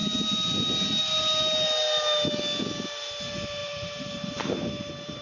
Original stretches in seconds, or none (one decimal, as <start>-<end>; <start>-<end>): 0.0-3.6